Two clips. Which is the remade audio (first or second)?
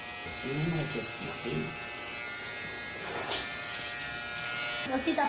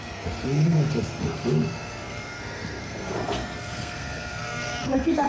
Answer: second